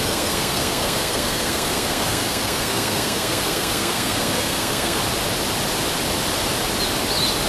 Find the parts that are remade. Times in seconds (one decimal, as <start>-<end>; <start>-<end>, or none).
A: 0.0-5.0